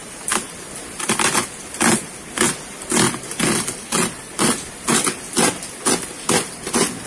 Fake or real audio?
real